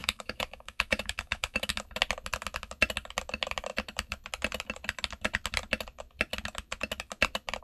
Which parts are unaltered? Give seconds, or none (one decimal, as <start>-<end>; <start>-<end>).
1.7-7.6